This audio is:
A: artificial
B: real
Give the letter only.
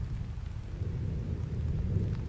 B